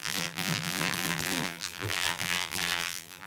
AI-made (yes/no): yes